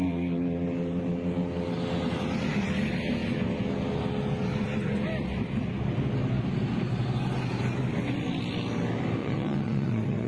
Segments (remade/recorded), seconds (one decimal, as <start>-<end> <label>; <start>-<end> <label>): 0.0-9.2 recorded; 9.2-10.3 remade

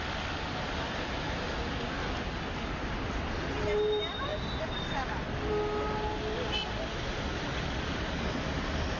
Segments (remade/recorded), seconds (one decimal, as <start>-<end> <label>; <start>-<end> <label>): 0.0-9.0 recorded

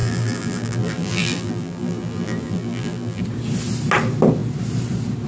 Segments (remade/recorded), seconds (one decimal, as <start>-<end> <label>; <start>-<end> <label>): 0.0-3.2 remade; 3.2-5.3 recorded

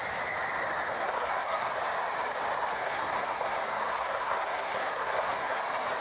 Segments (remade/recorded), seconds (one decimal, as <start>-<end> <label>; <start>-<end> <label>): 0.0-0.9 recorded; 0.9-1.7 remade; 1.7-2.7 recorded; 2.7-5.6 remade; 5.6-6.0 recorded

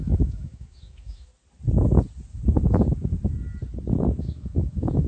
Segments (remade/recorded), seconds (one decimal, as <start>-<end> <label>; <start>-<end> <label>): 0.0-1.3 remade; 1.3-4.2 recorded; 4.2-5.1 remade

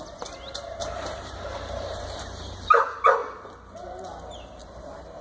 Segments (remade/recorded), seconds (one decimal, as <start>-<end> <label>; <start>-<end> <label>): 0.0-0.8 recorded; 0.8-2.7 remade; 2.7-5.2 recorded

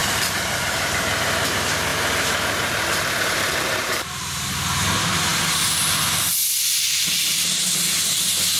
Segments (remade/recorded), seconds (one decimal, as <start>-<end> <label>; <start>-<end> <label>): 0.0-1.9 recorded; 1.9-4.5 remade; 4.5-8.6 recorded